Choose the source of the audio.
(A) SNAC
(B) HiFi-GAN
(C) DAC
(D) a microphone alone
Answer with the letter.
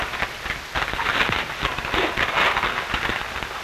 D